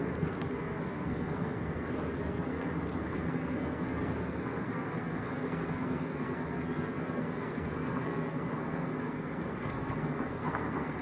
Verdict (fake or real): fake